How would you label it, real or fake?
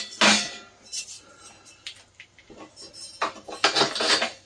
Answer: real